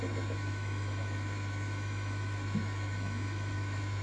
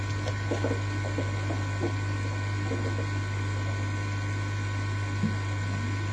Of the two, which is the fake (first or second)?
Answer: first